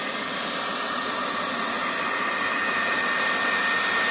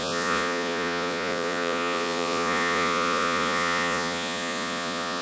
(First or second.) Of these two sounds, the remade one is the second